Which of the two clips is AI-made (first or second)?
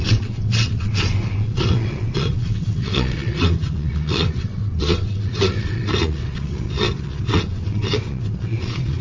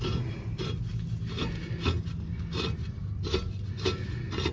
first